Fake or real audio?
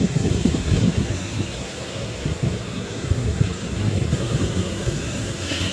fake